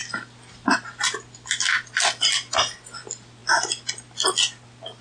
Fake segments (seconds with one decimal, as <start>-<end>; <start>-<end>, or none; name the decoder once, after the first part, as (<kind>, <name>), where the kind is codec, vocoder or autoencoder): none